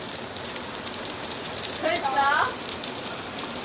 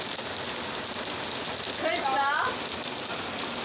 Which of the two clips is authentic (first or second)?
second